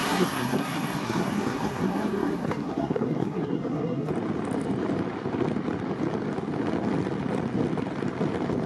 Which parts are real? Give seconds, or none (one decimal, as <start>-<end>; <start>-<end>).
4.1-8.7